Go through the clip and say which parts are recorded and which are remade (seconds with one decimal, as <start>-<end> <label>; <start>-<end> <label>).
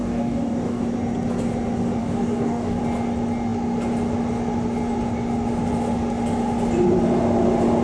0.0-0.8 remade; 0.8-2.0 recorded; 2.0-2.8 remade; 2.8-7.8 recorded